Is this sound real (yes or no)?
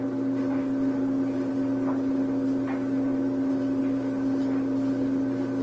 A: yes